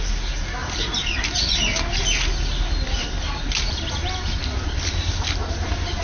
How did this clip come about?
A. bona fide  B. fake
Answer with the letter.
A